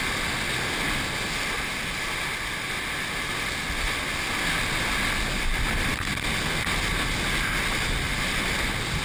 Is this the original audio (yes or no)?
yes